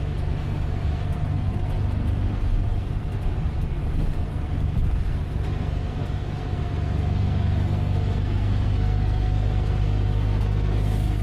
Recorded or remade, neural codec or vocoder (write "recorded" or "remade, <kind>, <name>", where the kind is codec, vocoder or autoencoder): remade, codec, SNAC